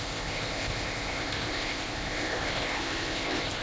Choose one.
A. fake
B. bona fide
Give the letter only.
A